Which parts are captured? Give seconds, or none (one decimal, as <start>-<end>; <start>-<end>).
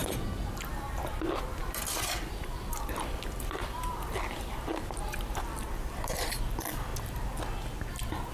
0.0-0.5; 6.9-7.9